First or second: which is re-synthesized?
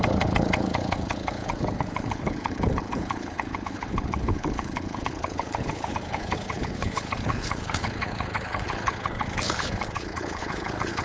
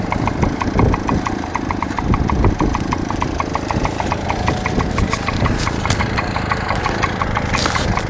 first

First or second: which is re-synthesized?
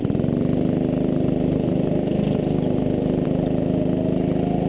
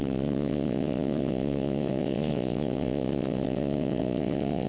second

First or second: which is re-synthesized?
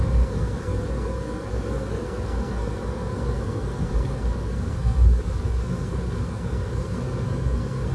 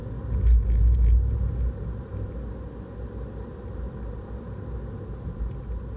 first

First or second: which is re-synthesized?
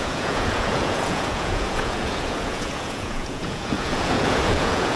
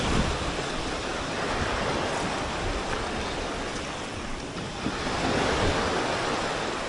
first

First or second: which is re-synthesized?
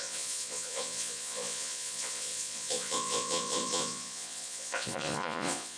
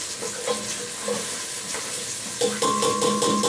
first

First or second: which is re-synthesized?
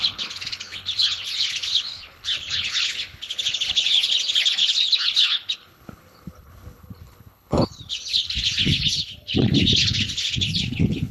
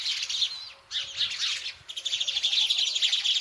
first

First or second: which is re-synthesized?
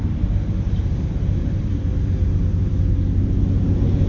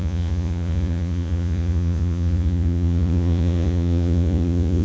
second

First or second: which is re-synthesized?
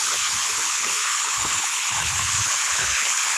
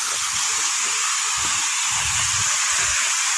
first